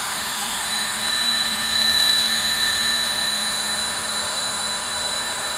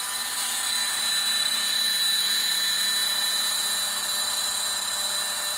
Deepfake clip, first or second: first